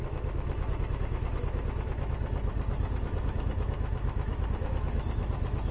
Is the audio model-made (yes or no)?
yes